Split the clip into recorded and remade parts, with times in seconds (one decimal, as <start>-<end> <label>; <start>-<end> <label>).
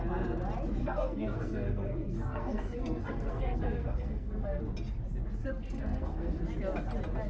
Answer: 0.0-0.8 recorded; 0.8-4.6 remade; 4.6-5.4 recorded; 5.4-6.4 remade; 6.4-7.3 recorded